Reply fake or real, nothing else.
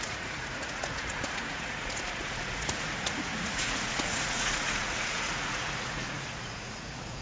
fake